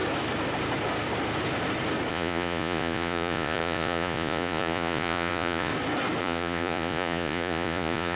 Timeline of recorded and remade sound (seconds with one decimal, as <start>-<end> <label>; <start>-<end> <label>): 0.0-2.1 recorded; 2.1-5.7 remade; 5.7-6.2 recorded; 6.2-8.2 remade

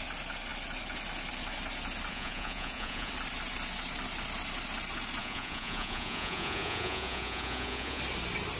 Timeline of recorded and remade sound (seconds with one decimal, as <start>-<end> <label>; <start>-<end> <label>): 0.0-2.1 recorded; 2.1-3.1 remade; 3.1-5.2 recorded; 5.2-8.0 remade; 8.0-8.6 recorded

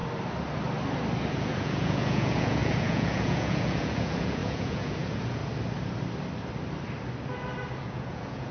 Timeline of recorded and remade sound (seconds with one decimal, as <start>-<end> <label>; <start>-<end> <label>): 0.0-1.3 recorded; 1.3-5.4 remade; 5.4-7.8 recorded; 7.8-8.5 remade